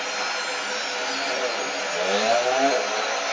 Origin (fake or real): real